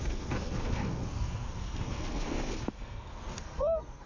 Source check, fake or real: fake